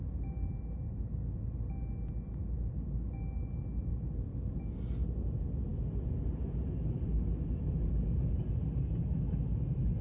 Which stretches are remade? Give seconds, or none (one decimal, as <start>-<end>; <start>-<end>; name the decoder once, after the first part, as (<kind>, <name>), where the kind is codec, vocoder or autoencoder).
none